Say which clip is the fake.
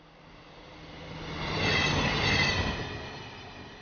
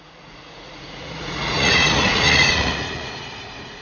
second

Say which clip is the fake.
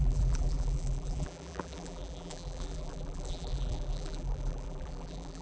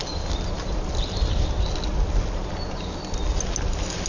first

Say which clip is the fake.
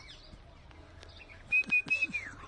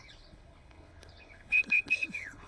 second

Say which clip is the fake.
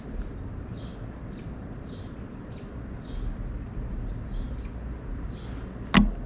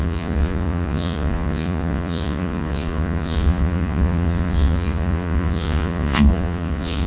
second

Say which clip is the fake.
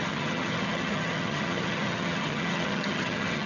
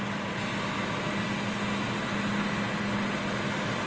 first